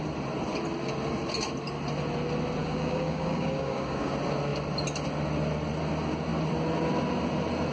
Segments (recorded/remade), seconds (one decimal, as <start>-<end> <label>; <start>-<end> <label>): 0.0-2.6 recorded; 2.6-4.1 remade; 4.1-7.7 recorded